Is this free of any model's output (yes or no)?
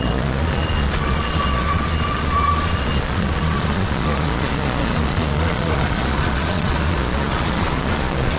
no